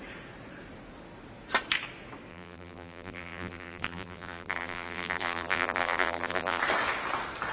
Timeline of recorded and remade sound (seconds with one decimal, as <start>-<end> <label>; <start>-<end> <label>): 0.0-2.3 recorded; 2.3-6.6 remade; 6.6-7.5 recorded